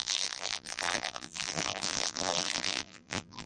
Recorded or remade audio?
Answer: remade